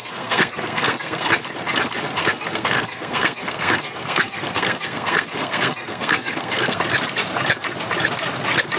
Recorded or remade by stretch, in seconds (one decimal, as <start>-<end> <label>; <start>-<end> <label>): 0.0-1.3 remade; 1.3-2.2 recorded; 2.2-6.8 remade; 6.8-8.8 recorded

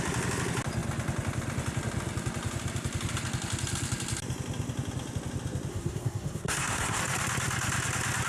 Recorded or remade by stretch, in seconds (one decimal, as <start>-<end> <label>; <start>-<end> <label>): 0.0-5.7 recorded; 5.7-7.0 remade; 7.0-8.3 recorded

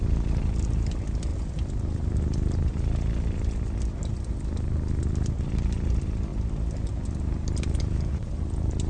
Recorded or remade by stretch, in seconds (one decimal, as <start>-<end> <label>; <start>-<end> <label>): 0.0-8.9 recorded

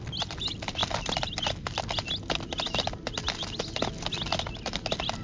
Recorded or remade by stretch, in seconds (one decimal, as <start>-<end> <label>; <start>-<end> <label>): 0.0-5.2 recorded

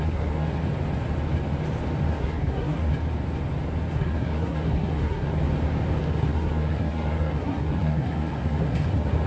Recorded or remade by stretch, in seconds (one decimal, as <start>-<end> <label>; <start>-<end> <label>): 0.0-0.6 remade; 0.6-2.1 recorded; 2.1-2.9 remade; 2.9-3.9 recorded; 3.9-5.4 remade; 5.4-6.0 recorded; 6.0-9.3 remade